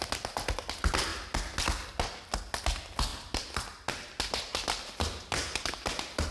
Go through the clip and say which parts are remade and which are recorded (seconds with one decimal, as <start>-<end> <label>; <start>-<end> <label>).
0.0-6.3 recorded

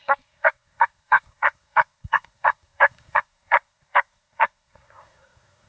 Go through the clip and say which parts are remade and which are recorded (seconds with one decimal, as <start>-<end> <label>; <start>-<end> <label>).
0.0-5.7 remade

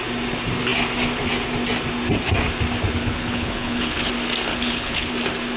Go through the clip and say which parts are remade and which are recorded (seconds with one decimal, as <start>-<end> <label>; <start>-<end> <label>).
0.0-3.0 recorded; 3.0-4.1 remade; 4.1-4.5 recorded; 4.5-5.1 remade; 5.1-5.6 recorded

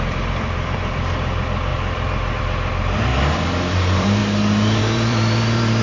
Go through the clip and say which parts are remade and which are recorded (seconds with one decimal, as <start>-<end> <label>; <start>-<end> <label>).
0.0-3.1 remade; 3.1-3.7 recorded; 3.7-4.2 remade; 4.2-4.8 recorded; 4.8-5.8 remade